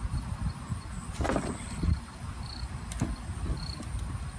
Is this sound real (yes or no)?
yes